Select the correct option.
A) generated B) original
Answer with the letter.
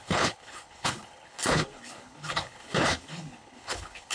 A